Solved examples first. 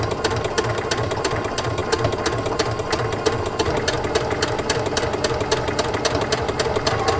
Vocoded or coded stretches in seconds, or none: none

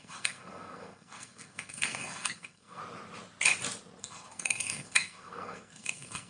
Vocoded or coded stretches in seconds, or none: 0.0-2.8 (codec, SNAC); 4.0-6.3